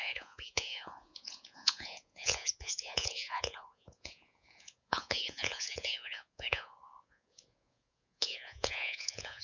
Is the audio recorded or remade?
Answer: remade